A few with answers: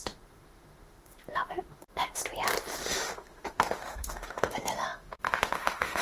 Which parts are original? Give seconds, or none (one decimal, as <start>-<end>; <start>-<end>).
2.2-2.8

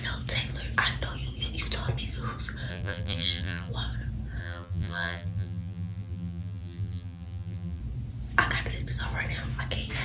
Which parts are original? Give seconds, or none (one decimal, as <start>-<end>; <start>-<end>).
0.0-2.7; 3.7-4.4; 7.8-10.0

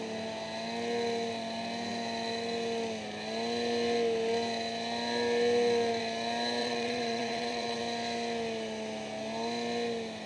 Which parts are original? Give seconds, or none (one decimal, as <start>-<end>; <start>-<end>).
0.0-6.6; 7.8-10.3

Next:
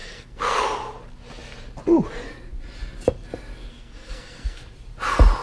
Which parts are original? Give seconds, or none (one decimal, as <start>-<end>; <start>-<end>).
0.6-3.7; 4.6-5.4

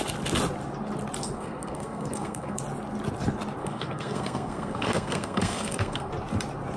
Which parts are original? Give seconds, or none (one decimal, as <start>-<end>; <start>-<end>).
0.0-1.2; 2.6-3.6; 6.1-6.8

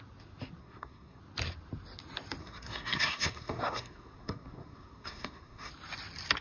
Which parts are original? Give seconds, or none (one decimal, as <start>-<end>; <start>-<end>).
0.0-0.6; 1.2-2.4; 5.7-6.4

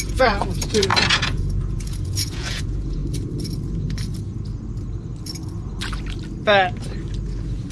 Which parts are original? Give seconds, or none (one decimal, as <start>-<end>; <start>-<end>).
3.0-7.7

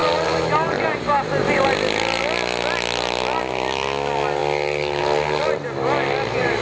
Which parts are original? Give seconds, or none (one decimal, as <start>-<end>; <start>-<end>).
0.0-6.6